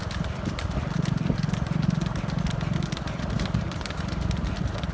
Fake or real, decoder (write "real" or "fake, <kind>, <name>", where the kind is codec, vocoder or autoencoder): real